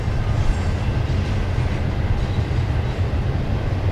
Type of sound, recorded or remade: remade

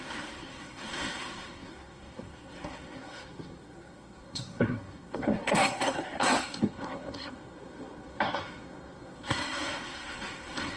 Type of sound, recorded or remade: remade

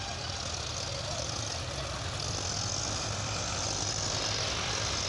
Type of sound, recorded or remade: recorded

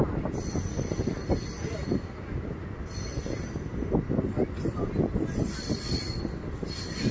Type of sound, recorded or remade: recorded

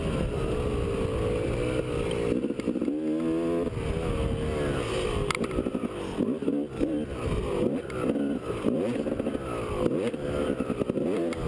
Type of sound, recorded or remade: recorded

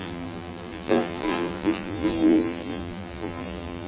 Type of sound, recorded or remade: remade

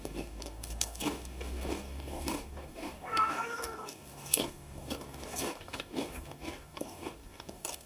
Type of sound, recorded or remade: remade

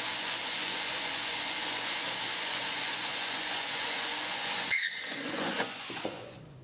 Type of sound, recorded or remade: remade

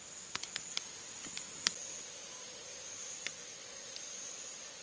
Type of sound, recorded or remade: recorded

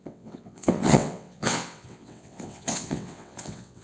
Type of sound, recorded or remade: remade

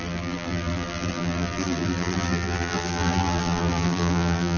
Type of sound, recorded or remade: remade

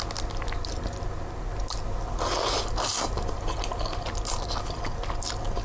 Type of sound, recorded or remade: recorded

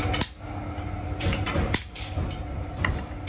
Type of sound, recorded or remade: recorded